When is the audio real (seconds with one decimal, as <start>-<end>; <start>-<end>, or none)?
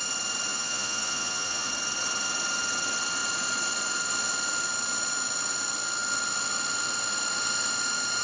0.0-0.5; 1.7-8.2